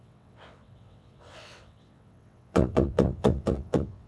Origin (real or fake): fake